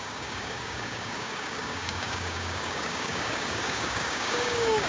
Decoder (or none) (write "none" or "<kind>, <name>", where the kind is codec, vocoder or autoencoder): codec, DAC